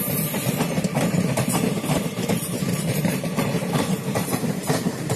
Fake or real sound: fake